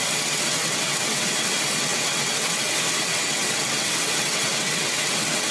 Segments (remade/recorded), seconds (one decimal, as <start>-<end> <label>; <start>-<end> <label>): 0.0-5.5 remade